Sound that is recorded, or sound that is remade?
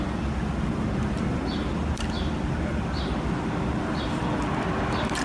remade